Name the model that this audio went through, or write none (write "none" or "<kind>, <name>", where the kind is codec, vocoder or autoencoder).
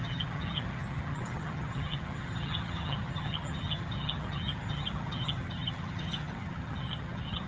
vocoder, HiFi-GAN